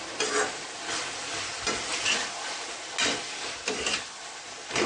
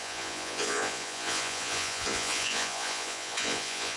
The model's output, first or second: second